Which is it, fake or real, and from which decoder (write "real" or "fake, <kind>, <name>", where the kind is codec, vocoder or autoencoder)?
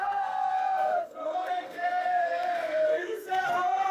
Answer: fake, codec, SNAC